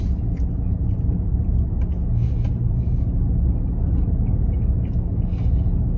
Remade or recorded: recorded